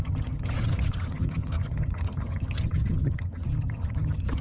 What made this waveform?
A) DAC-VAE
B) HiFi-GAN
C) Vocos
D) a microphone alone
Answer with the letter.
B